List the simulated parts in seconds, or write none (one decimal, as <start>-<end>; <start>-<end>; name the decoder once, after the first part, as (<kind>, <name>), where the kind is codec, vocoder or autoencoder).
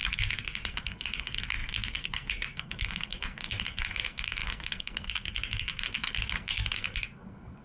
0.0-7.6 (codec, SNAC)